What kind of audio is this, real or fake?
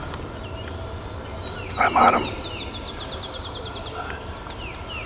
real